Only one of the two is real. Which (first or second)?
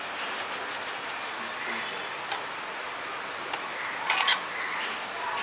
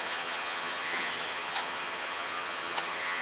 first